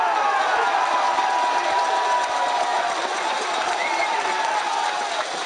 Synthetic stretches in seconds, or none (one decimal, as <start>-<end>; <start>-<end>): none